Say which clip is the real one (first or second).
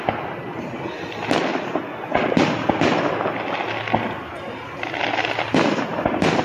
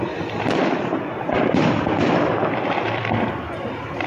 first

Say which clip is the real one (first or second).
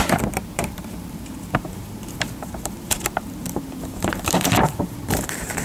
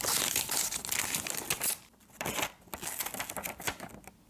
second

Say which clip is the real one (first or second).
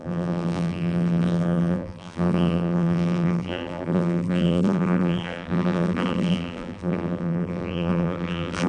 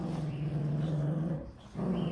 second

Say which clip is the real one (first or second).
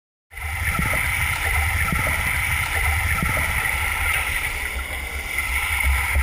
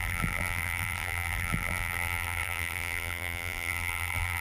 first